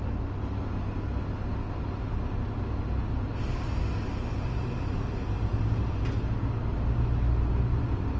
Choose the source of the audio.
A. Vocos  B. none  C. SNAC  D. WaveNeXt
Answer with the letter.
B